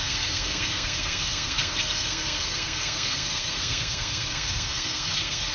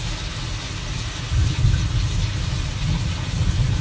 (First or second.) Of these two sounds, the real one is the second